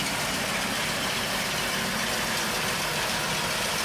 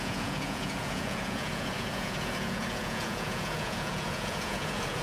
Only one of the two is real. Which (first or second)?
first